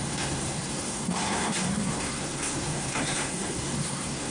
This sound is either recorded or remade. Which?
remade